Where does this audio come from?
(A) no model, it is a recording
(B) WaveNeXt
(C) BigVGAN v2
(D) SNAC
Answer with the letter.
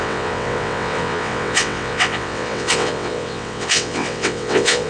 B